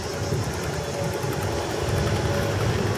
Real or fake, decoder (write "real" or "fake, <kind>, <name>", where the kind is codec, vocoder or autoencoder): real